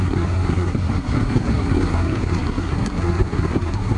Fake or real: fake